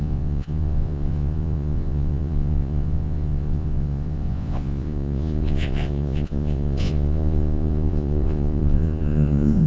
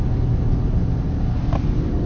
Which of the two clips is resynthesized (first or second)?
first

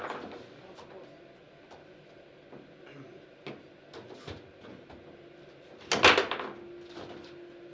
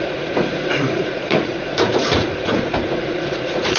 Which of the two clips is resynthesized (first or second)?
second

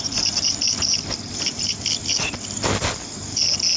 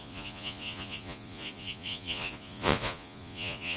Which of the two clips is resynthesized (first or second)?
second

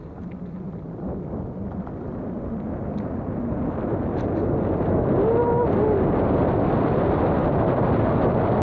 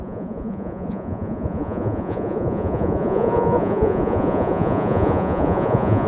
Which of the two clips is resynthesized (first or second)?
second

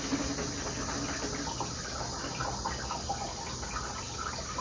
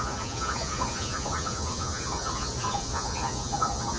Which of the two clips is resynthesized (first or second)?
second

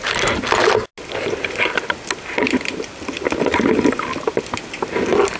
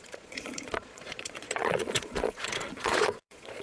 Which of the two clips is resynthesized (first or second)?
second